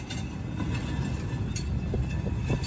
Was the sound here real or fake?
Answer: real